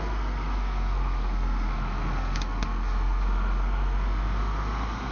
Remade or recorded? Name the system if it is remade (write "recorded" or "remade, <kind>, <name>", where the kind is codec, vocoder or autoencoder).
remade, codec, SNAC